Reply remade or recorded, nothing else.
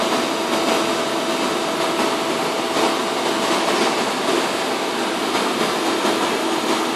recorded